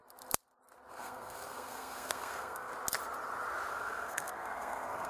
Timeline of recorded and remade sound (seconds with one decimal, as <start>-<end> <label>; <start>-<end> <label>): 0.0-0.9 recorded; 0.9-2.7 remade; 2.7-3.7 recorded; 3.7-5.1 remade